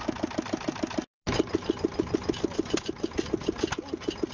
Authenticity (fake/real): real